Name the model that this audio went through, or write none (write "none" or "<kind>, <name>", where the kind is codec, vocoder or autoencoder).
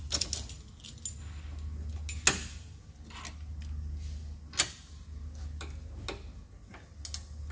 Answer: none